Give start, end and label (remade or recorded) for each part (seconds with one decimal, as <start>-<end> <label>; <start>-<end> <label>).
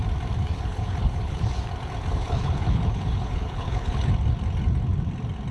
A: 0.0-0.4 recorded; 0.4-1.6 remade; 1.6-2.1 recorded; 2.1-4.1 remade; 4.1-5.5 recorded